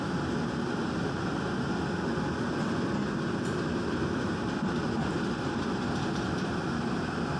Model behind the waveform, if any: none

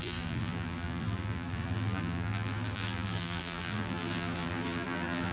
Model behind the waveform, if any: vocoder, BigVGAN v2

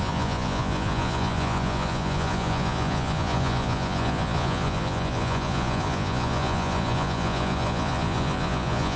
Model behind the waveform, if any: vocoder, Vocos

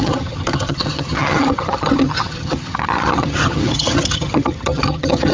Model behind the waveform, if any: vocoder, HiFi-GAN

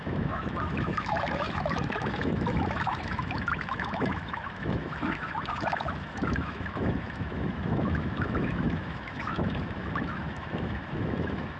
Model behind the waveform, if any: autoencoder, DAC-VAE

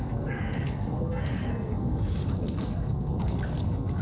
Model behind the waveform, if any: codec, SNAC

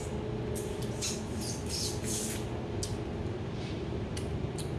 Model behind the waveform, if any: none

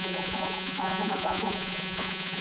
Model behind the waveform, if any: vocoder, Vocos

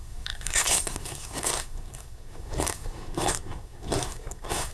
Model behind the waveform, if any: codec, SNAC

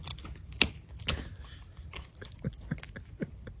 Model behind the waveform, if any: none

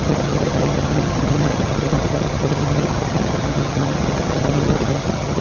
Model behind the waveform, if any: vocoder, HiFi-GAN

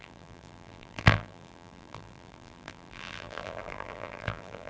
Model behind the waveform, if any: vocoder, BigVGAN v2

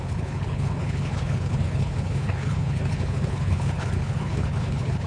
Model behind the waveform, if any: codec, HILCodec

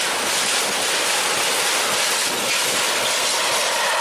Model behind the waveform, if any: none